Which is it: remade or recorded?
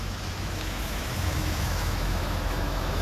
remade